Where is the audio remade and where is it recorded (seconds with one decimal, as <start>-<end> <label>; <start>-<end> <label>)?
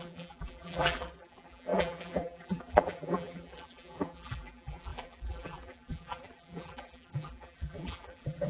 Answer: 0.0-8.5 remade